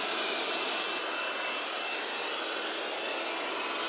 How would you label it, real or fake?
real